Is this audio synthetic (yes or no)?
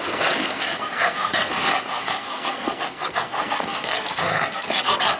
yes